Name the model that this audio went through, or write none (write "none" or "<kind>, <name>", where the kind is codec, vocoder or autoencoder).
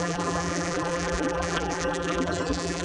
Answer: vocoder, BigVGAN v2